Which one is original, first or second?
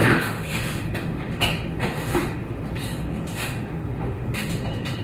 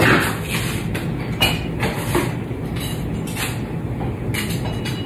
second